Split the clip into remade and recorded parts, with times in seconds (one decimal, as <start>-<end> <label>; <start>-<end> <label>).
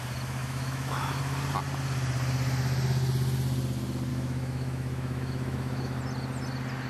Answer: 0.0-0.4 recorded; 0.4-1.2 remade; 1.2-4.1 recorded; 4.1-6.0 remade; 6.0-6.9 recorded